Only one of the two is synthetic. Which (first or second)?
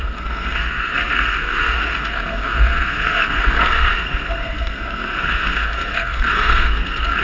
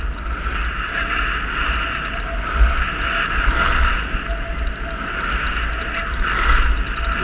first